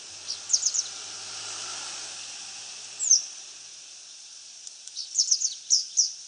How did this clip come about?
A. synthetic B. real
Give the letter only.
B